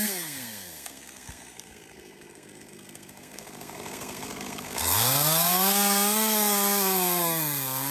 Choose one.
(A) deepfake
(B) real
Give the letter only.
A